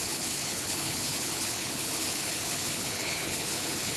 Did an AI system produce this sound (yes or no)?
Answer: yes